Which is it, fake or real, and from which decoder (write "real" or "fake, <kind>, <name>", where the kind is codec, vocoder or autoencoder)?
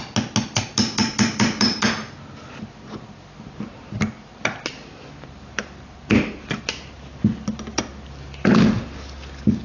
real